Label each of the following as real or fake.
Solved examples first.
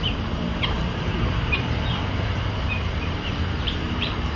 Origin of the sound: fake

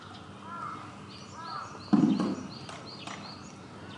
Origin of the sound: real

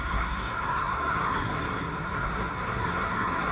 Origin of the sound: fake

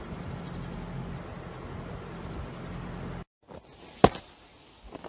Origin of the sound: real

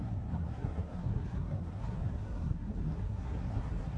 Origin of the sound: fake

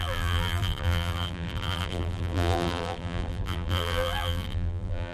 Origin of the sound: fake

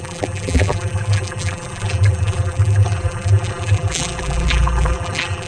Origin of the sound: fake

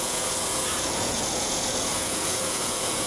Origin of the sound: fake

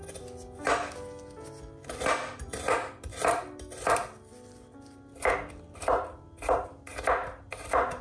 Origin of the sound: real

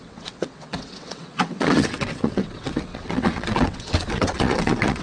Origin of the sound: fake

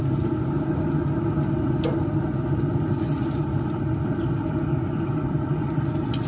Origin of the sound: real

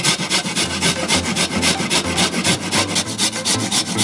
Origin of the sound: real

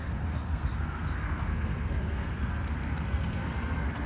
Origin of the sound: fake